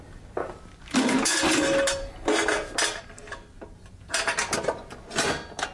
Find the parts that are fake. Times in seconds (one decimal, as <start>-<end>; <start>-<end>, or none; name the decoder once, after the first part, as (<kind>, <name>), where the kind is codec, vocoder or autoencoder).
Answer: 0.4-1.4 (codec, DAC)